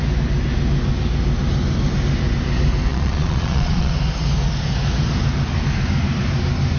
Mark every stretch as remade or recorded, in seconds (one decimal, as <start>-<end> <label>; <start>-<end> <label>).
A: 0.0-2.9 recorded; 2.9-3.9 remade; 3.9-6.8 recorded